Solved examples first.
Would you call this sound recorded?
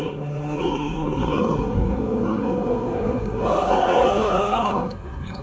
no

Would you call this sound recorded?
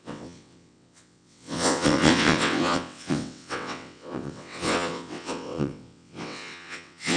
no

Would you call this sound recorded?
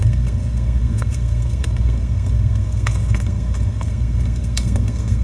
no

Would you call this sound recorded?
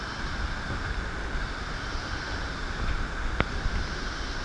yes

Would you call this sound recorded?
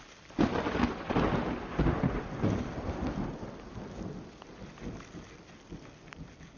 yes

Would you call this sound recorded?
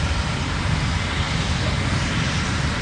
yes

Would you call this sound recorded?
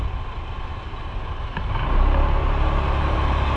yes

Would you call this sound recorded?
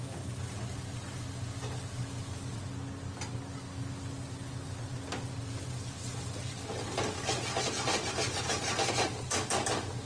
yes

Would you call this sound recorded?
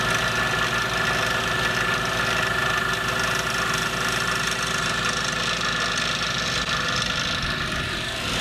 yes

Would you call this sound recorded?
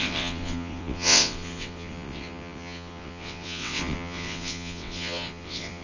no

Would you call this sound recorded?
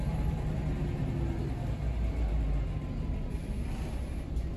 yes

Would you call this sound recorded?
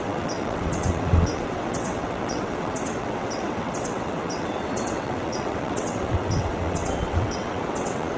no